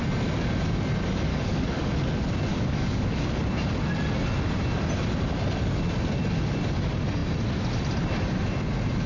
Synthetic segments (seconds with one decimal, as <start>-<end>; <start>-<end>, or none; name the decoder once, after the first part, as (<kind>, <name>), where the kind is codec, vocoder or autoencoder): 1.3-1.9 (codec, DAC); 2.5-3.4